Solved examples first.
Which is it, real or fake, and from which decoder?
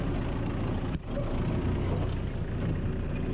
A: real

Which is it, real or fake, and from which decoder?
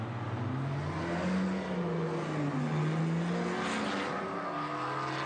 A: real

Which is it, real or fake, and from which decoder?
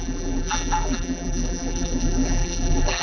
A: fake, vocoder, BigVGAN v2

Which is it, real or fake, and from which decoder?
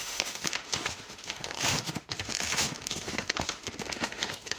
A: fake, autoencoder, DAC-VAE